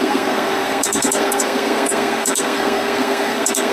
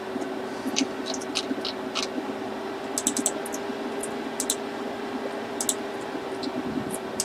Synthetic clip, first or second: first